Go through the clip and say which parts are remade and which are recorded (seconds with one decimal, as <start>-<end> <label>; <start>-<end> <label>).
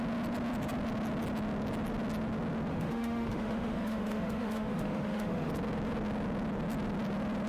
0.0-2.7 recorded; 2.7-5.5 remade; 5.5-7.5 recorded